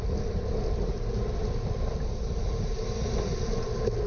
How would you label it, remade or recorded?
recorded